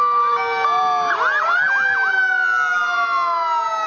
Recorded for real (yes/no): yes